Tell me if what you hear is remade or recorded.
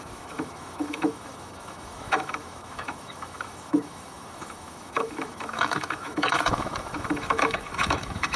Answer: remade